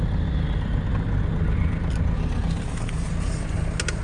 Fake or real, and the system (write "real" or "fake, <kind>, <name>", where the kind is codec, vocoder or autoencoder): real